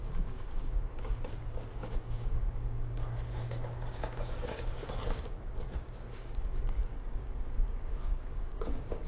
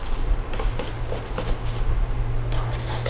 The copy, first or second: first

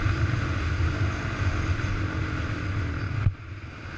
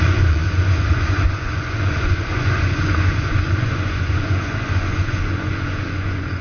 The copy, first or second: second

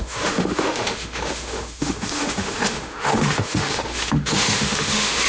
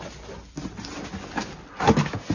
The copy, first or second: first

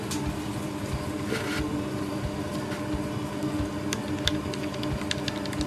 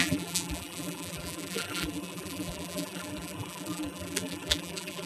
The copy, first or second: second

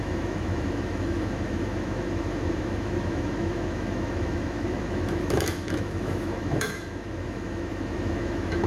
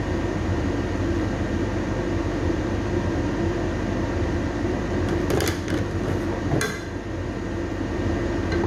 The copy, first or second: first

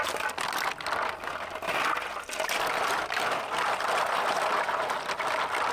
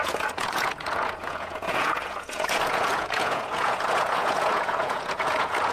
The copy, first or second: second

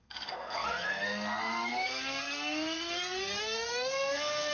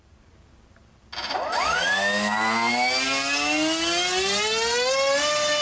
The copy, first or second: first